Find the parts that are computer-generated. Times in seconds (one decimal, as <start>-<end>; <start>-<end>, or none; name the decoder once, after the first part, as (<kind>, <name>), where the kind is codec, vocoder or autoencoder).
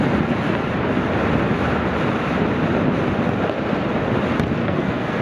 4.6-5.2 (codec, SNAC)